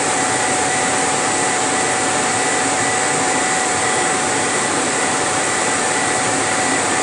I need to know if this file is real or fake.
fake